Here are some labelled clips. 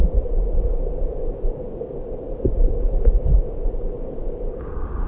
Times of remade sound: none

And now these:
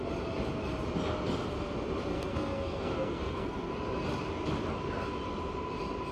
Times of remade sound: 2.1-3.7 (codec, SNAC)